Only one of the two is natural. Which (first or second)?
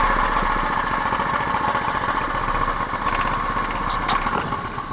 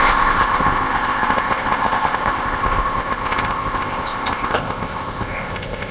first